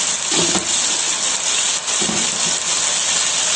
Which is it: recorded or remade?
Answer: recorded